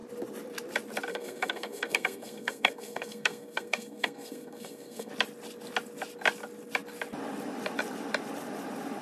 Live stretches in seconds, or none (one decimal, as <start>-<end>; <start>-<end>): 0.0-1.1; 5.1-9.0